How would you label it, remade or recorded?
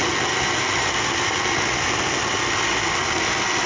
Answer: recorded